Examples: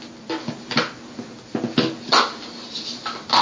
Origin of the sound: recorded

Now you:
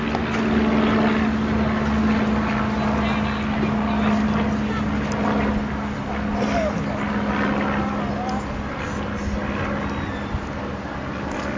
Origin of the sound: recorded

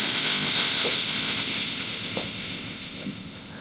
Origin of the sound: remade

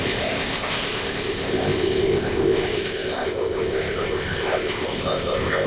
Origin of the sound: remade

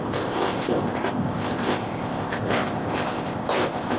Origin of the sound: remade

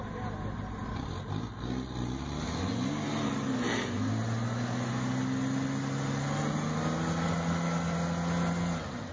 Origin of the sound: recorded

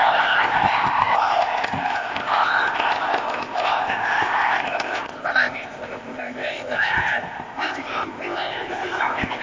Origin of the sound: remade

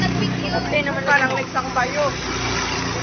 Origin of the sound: recorded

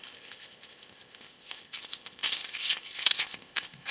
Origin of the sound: remade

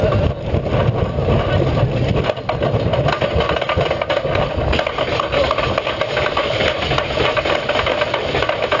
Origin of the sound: recorded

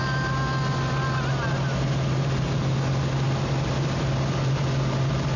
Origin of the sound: recorded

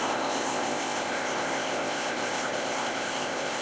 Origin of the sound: remade